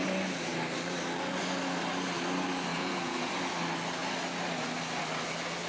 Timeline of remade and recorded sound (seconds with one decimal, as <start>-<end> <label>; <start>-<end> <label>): 0.0-2.7 recorded; 2.7-3.3 remade; 3.3-5.7 recorded